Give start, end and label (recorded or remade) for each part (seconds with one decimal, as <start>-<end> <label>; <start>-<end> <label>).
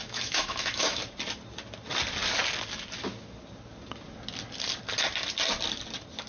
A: 0.0-1.0 remade; 1.0-6.3 recorded